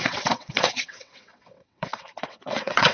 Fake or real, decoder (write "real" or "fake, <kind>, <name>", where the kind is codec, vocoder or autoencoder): fake, vocoder, WaveNeXt